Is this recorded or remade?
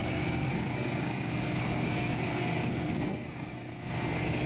remade